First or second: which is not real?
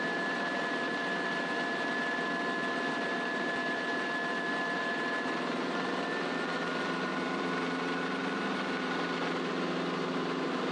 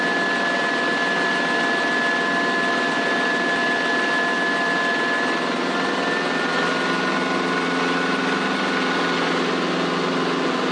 first